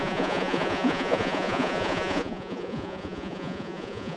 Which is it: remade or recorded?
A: remade